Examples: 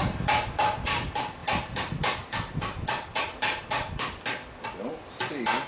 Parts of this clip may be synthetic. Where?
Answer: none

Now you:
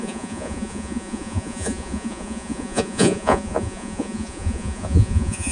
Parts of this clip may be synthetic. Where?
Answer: 0.0-5.5 (vocoder, Vocos)

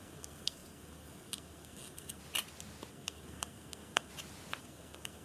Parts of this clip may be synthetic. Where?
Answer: 0.0-2.2 (codec, SNAC); 2.9-4.1; 4.6-5.2

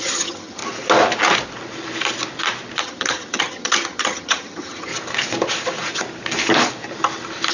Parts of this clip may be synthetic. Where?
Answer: 0.0-0.6 (vocoder, HiFi-GAN); 2.8-4.9

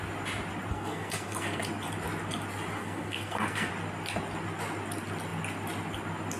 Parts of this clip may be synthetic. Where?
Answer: 0.7-1.6 (codec, SNAC); 2.8-3.7

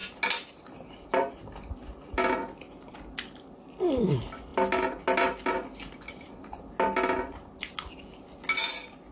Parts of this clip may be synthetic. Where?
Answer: none

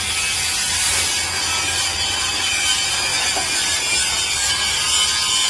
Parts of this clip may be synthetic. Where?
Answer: 1.9-2.6 (vocoder, Vocos)

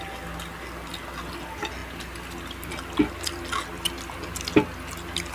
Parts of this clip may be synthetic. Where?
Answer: none